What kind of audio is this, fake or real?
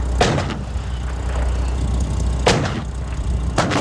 real